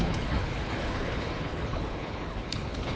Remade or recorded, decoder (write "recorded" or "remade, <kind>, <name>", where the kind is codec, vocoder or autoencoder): remade, codec, HILCodec